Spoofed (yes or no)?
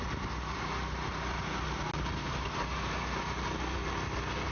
no